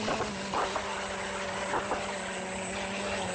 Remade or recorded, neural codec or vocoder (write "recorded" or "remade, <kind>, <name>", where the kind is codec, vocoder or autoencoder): recorded